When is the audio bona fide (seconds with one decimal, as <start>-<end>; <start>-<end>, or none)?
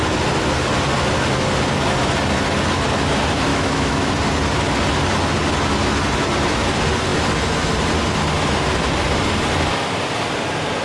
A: 0.0-3.5; 4.1-10.8